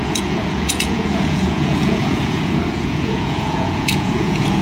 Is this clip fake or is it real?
fake